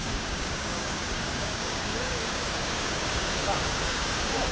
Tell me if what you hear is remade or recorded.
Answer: remade